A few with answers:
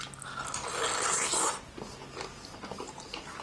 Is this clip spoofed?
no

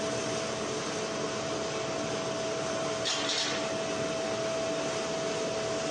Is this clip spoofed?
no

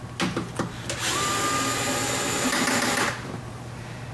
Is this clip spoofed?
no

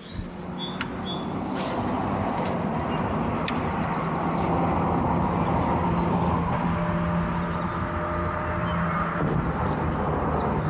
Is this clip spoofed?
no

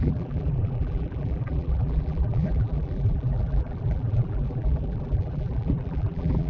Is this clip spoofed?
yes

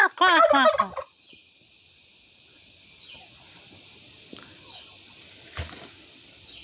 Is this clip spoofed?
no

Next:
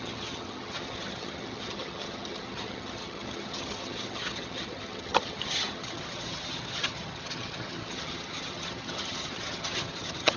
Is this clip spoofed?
yes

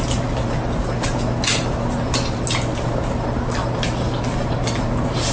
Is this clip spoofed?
no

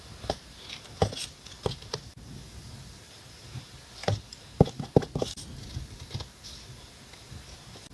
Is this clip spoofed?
no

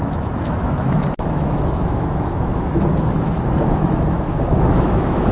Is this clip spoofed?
yes